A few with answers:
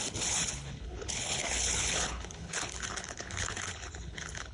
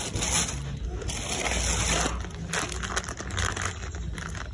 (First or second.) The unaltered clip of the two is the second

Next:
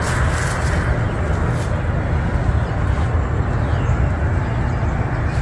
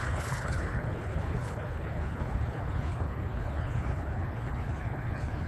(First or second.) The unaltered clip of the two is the first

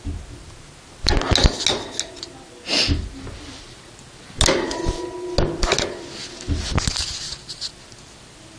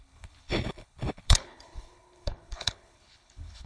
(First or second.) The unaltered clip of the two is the first